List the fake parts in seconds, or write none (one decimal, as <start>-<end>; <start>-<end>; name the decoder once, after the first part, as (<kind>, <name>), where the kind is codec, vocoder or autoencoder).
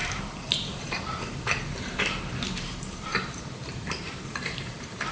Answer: 0.0-5.1 (vocoder, BigVGAN v2)